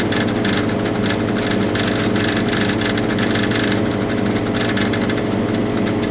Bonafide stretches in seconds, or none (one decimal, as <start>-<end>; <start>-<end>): 0.0-6.1